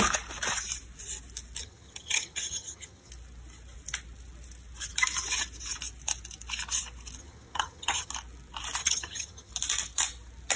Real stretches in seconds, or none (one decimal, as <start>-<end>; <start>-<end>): 0.0-1.6; 3.1-7.2; 8.1-8.8; 9.5-10.6